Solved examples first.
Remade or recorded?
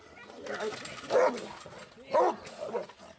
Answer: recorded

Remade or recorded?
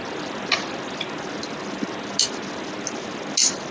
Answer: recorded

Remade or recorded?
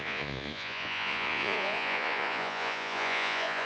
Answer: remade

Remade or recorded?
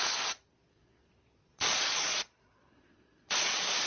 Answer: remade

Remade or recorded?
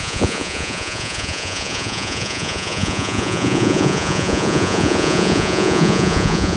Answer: remade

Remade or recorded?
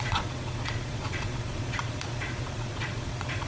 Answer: remade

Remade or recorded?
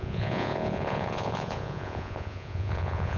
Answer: remade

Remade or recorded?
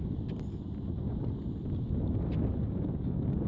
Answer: recorded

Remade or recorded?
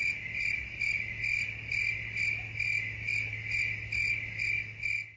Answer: recorded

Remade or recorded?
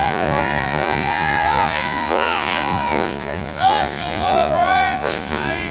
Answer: remade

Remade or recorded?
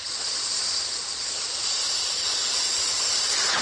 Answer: remade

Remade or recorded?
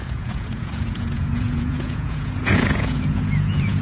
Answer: remade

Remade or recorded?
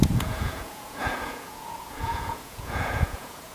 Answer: remade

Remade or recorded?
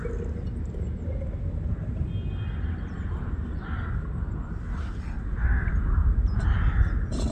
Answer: recorded